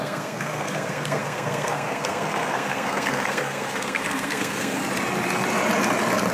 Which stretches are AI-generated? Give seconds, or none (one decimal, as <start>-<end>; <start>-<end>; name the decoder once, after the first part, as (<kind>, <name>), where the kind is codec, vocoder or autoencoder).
0.0-4.8 (codec, SNAC)